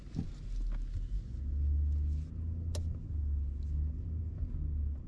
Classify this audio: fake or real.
real